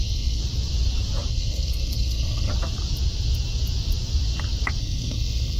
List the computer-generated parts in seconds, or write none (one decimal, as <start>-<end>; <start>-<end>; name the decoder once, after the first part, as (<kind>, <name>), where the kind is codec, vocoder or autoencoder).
0.0-0.4 (codec, SNAC); 1.3-2.5; 4.8-5.6